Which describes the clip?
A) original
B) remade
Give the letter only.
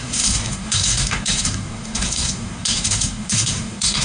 B